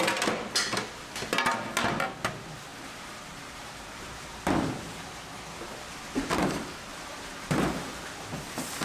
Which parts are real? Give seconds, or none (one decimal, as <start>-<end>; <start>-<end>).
0.0-2.7; 4.2-6.9; 7.9-8.8